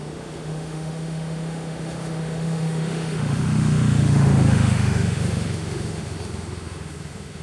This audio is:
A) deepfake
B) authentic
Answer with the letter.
A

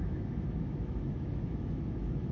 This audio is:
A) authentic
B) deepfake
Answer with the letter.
B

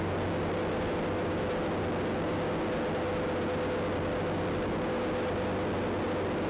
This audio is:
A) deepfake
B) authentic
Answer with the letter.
B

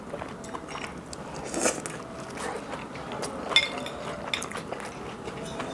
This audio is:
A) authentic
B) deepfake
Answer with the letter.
A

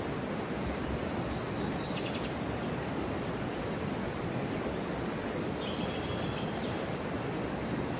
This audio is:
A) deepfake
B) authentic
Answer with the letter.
B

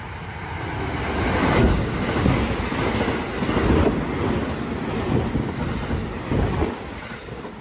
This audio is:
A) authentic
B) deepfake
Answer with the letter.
A